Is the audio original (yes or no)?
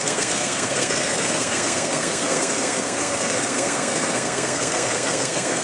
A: no